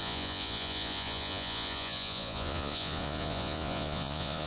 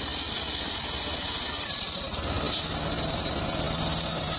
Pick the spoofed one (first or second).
first